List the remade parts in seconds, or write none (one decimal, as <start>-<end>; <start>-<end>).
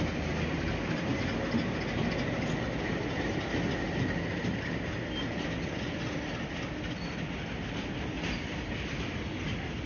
none